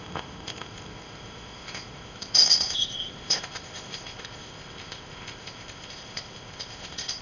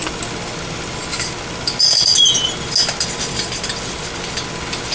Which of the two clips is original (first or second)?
second